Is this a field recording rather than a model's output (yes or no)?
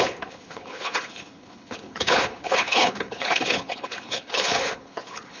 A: no